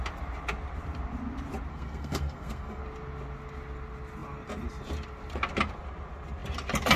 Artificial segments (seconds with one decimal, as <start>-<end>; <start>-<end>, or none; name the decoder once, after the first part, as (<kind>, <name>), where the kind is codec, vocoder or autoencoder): 1.7-2.8 (codec, SNAC)